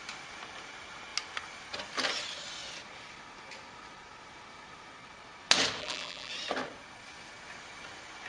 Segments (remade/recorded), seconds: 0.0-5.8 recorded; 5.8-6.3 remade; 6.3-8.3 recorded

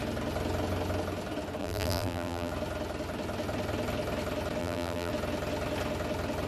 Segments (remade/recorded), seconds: 0.0-1.6 recorded; 1.6-2.5 remade; 2.5-4.6 recorded; 4.6-5.1 remade; 5.1-6.5 recorded